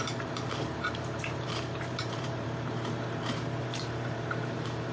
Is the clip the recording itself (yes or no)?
no